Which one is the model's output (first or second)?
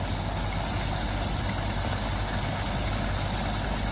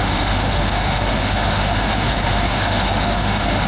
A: second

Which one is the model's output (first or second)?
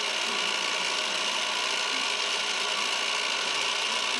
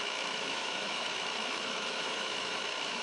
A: second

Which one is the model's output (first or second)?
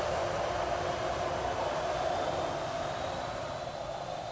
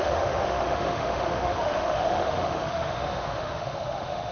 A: second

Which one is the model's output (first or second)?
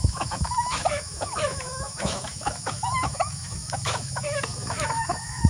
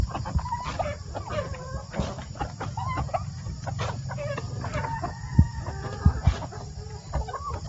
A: first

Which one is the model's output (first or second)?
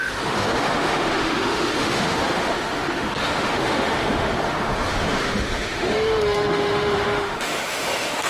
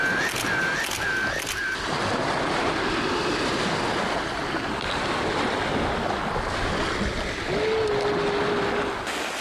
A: first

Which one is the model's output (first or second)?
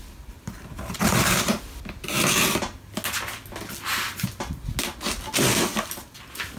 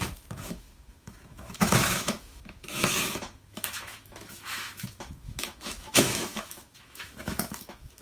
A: second